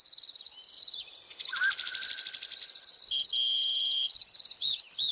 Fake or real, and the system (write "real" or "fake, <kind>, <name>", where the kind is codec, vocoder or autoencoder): real